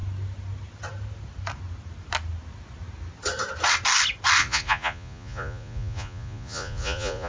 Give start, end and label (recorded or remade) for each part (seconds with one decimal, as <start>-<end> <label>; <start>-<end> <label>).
0.0-4.4 recorded; 4.4-7.3 remade